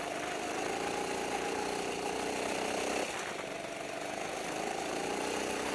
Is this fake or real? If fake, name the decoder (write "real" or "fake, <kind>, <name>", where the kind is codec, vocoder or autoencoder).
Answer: real